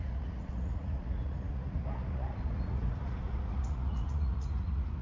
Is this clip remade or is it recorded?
remade